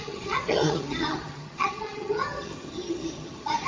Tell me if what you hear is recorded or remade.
remade